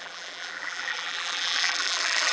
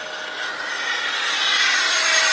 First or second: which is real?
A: second